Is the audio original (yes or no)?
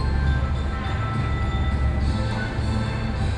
yes